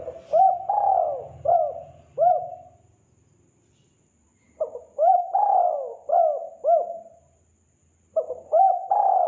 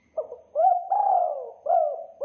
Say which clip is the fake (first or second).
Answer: second